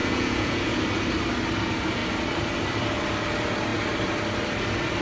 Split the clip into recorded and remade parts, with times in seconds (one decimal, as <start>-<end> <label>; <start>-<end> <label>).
0.0-0.8 remade; 0.8-5.0 recorded